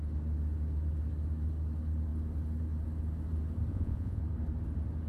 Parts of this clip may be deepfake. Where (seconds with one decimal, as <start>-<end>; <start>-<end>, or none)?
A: 3.7-4.2